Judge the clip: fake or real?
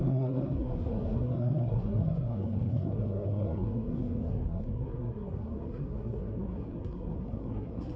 fake